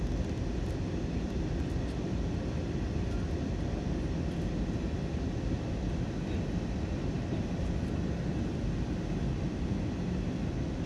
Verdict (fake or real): real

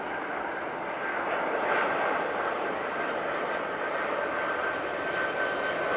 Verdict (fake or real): fake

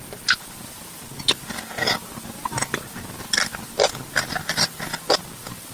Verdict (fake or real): real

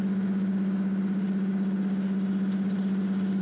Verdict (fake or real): real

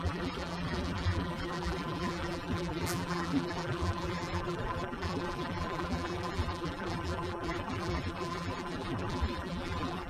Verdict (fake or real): fake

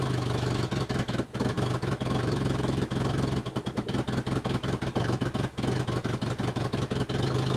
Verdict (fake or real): fake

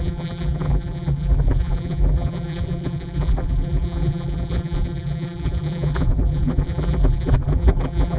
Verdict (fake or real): fake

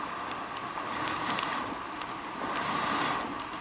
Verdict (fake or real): real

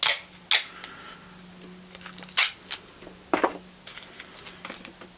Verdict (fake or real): real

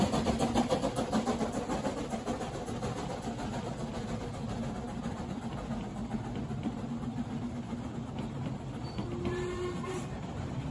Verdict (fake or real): real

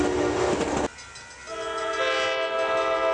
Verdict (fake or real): real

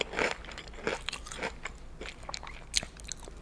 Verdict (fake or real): real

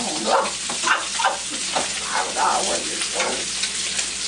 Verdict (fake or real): real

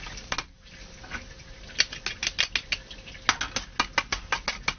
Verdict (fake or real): real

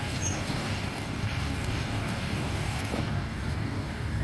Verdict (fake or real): fake